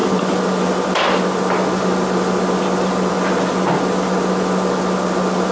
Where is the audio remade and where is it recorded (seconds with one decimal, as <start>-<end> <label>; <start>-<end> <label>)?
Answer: 0.0-5.5 recorded